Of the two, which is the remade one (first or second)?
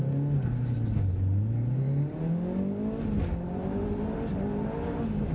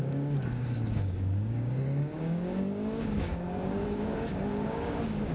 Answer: second